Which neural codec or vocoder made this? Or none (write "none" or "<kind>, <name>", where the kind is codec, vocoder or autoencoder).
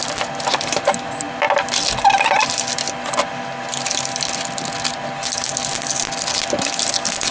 none